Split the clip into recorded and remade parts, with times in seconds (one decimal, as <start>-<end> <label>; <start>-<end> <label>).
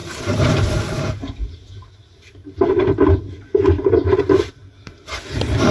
0.0-1.9 remade; 1.9-2.4 recorded; 2.4-4.5 remade; 4.5-5.7 recorded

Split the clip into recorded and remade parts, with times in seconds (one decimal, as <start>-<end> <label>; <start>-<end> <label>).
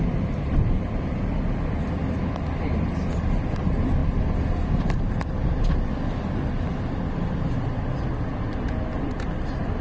0.0-9.8 recorded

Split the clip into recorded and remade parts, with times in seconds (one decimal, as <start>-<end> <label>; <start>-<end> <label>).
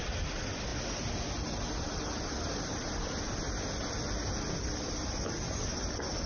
0.0-6.3 recorded